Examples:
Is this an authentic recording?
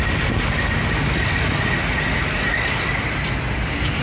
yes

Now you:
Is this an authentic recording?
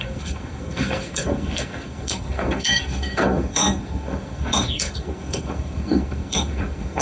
no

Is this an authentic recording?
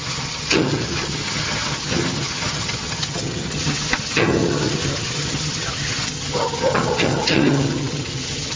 no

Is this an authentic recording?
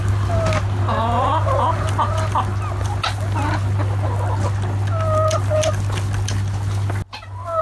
yes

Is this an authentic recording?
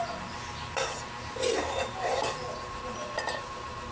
yes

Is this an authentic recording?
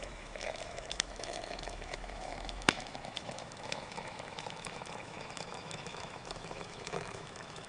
no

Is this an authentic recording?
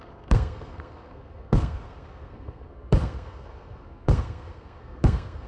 no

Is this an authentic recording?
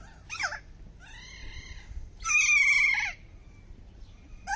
yes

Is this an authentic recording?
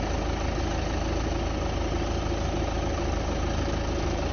yes